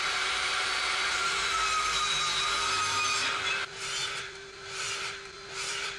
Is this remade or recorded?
remade